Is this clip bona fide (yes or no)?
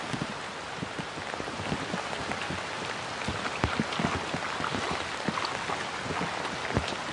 yes